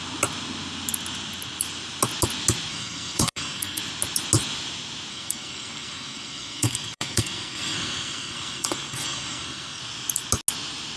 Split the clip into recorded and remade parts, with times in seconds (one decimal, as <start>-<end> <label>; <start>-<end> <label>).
0.0-2.7 recorded; 2.7-3.8 remade; 3.8-5.1 recorded; 5.1-9.8 remade; 9.8-11.0 recorded